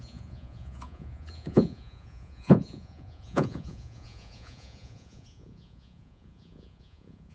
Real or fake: fake